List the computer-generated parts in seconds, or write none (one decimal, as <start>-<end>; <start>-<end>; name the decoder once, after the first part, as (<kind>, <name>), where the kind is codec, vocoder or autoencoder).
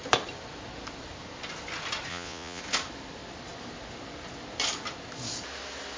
2.1-2.6 (vocoder, Vocos)